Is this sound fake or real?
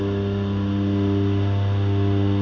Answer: real